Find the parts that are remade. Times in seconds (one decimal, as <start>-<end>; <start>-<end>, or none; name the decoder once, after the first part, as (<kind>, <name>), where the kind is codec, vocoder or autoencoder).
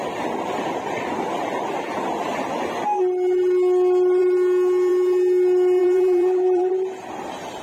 5.8-6.7 (vocoder, BigVGAN v2)